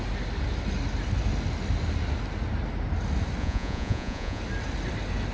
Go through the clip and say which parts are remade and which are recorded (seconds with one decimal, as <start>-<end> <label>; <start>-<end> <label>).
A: 0.0-3.4 recorded; 3.4-4.4 remade; 4.4-5.3 recorded